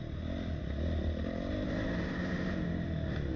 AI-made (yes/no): no